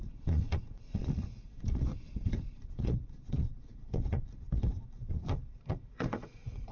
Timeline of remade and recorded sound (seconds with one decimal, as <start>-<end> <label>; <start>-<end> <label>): 0.0-6.7 remade